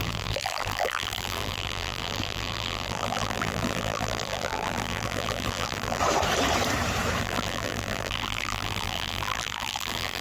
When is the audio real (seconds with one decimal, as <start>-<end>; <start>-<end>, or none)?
6.0-7.2